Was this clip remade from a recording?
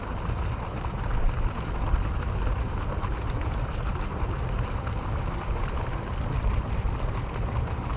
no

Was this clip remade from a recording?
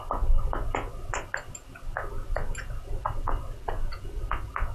no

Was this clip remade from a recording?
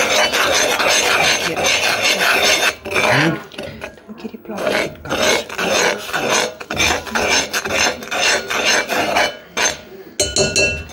no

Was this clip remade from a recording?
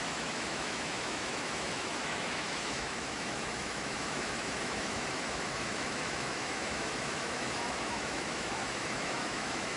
yes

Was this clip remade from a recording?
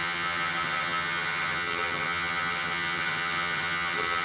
yes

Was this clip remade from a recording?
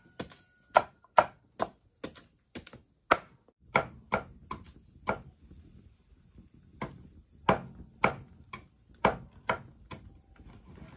no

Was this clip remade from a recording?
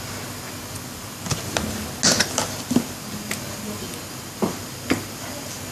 no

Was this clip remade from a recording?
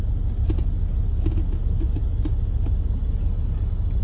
no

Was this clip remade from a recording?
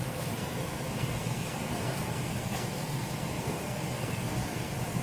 yes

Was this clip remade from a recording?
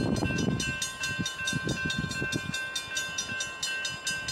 no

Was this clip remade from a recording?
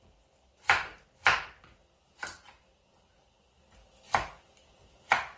no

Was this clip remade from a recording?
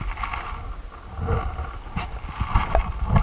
no